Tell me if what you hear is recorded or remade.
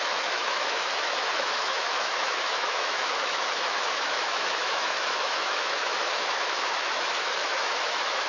remade